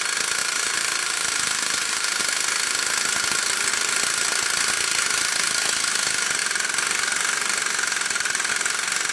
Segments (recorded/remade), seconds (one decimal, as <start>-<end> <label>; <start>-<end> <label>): 0.0-0.4 recorded; 0.4-2.2 remade; 2.2-9.1 recorded